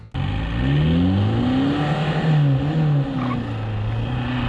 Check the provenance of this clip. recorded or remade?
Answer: recorded